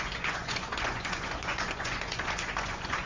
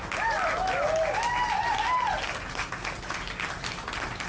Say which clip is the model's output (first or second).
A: first